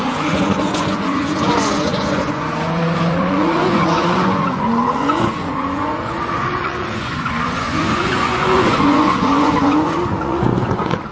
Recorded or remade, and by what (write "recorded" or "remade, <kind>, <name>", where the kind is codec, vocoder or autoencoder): remade, vocoder, Vocos